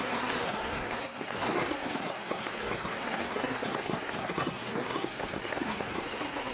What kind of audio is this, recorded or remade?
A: remade